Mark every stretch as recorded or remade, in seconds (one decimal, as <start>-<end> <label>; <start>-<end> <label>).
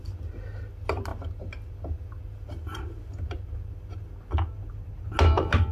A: 0.0-5.7 recorded